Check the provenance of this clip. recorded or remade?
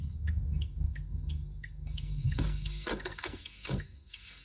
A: remade